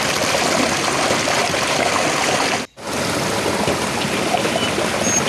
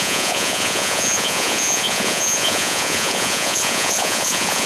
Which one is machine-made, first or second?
second